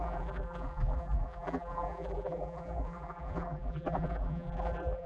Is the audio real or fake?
fake